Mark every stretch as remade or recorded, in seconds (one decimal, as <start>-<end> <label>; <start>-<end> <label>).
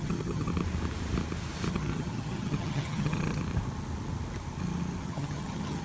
0.0-0.5 remade; 0.5-1.7 recorded; 1.7-3.4 remade; 3.4-5.0 recorded; 5.0-5.8 remade